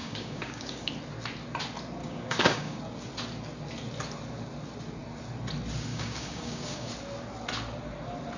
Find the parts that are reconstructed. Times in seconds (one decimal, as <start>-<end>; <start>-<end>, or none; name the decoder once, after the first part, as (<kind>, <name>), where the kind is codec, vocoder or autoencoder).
0.0-0.9 (codec, DAC); 2.0-2.8; 5.9-6.9